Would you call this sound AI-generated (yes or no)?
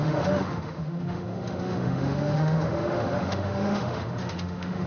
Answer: yes